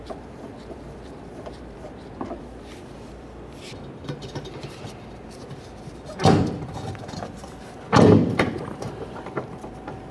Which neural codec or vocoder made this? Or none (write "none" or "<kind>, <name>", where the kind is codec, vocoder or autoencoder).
vocoder, BigVGAN v2